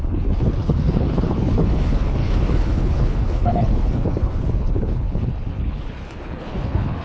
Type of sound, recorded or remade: remade